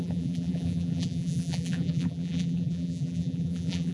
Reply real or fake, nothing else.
fake